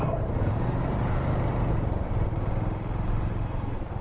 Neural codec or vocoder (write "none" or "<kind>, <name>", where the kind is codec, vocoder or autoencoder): vocoder, BigVGAN v2